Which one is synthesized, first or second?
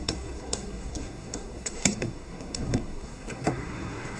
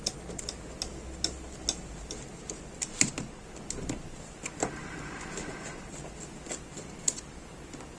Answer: first